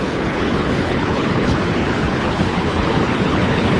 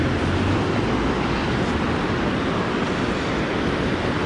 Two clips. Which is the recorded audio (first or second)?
second